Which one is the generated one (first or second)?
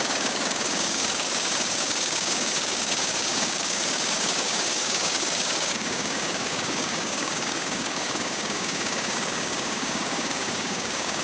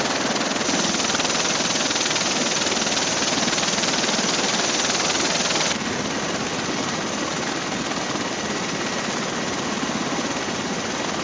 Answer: first